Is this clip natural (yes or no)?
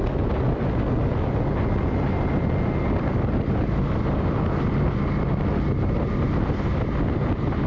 yes